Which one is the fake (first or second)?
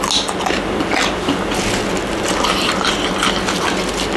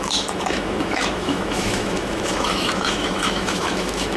second